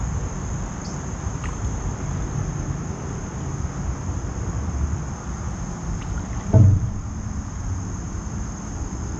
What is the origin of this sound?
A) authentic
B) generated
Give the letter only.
A